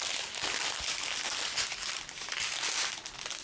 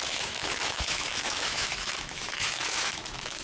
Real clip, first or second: first